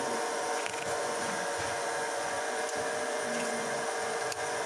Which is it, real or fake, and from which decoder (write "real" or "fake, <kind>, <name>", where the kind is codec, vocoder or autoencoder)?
fake, vocoder, Vocos